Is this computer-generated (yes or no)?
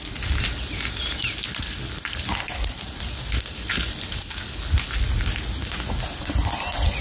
no